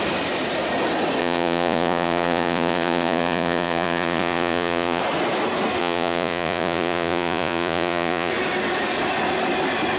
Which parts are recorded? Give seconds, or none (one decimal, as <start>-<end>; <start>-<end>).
0.0-1.2; 5.0-5.8; 8.3-10.0